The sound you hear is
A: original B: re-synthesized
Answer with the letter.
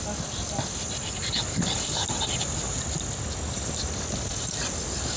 A